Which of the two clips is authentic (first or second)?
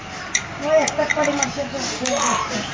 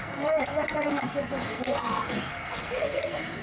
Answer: first